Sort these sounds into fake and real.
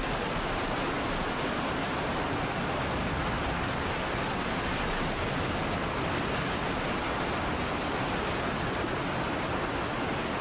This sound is real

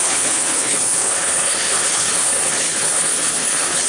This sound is fake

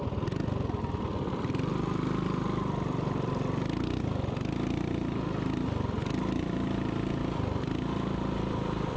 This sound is real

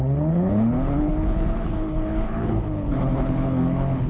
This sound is fake